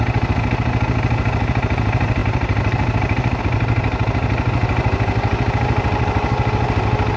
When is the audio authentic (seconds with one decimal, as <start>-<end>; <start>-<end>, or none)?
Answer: 0.0-2.2; 3.4-7.2